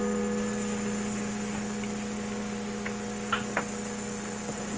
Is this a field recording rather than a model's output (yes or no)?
yes